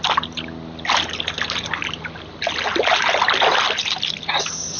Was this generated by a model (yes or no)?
no